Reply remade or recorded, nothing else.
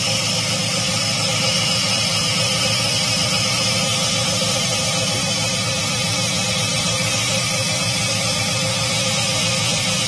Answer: recorded